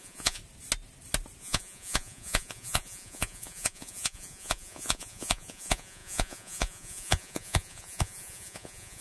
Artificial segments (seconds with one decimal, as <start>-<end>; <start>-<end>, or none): 0.0-0.4; 1.4-9.0